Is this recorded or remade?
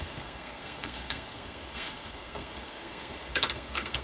remade